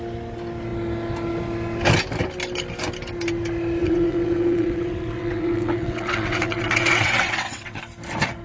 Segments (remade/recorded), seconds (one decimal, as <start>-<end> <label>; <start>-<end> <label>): 0.0-3.8 recorded; 3.8-7.8 remade; 7.8-8.4 recorded